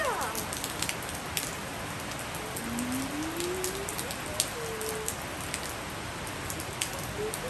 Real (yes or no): yes